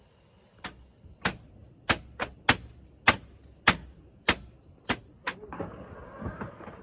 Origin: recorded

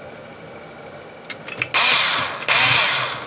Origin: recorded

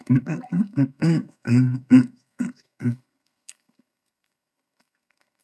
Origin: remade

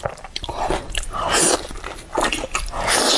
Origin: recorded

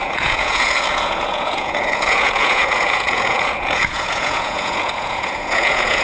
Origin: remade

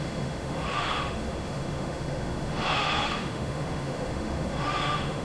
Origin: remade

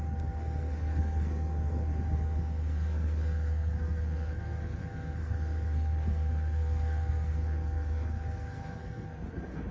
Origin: remade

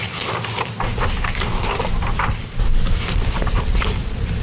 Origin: recorded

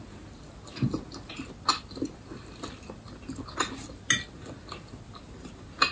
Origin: recorded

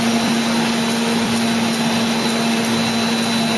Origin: recorded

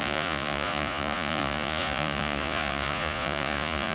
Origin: remade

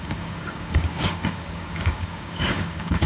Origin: remade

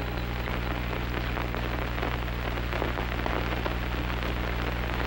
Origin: recorded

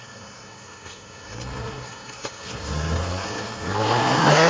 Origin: remade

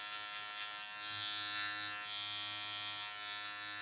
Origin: recorded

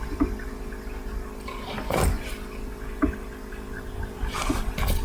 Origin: recorded